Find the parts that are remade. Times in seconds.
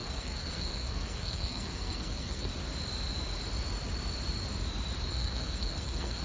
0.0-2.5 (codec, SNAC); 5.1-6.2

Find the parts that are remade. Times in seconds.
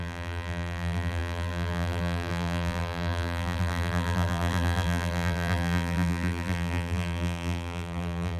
0.0-8.4 (vocoder, BigVGAN v2)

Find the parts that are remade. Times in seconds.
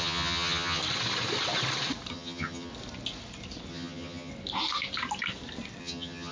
0.0-0.8 (vocoder, HiFi-GAN); 2.1-2.7; 3.7-4.3; 5.8-6.3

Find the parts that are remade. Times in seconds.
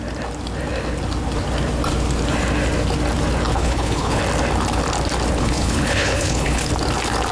3.5-4.2 (codec, HILCodec); 5.4-6.7